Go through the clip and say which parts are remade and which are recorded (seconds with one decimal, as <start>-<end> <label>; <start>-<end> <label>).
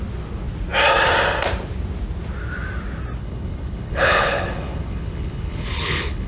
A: 0.0-3.2 recorded; 3.2-6.3 remade